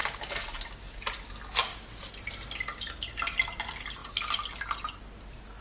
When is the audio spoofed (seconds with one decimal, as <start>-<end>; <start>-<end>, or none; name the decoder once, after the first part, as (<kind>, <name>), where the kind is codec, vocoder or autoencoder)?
none